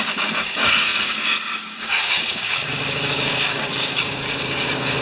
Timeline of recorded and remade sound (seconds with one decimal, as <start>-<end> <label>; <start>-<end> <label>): 0.0-5.0 remade